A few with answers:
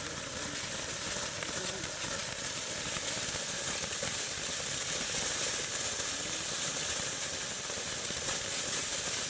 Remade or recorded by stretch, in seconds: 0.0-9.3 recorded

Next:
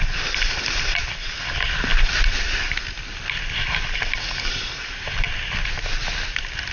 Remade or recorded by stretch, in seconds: 0.0-6.7 recorded

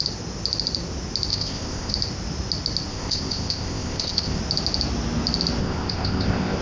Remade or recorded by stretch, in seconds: 0.0-1.3 recorded; 1.3-1.9 remade; 1.9-2.9 recorded; 2.9-4.4 remade; 4.4-5.6 recorded; 5.6-6.6 remade

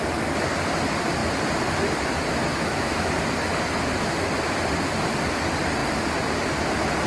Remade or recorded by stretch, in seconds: 0.0-2.5 recorded; 2.5-3.1 remade; 3.1-7.1 recorded

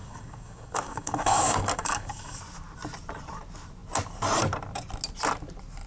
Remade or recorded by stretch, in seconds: 0.0-2.4 remade; 2.4-5.9 recorded

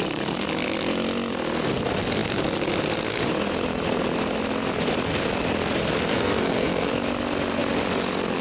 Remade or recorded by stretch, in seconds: 0.0-6.1 recorded; 6.1-6.9 remade; 6.9-8.4 recorded